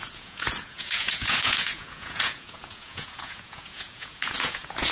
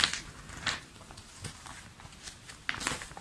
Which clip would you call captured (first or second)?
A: second